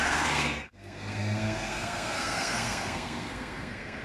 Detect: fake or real fake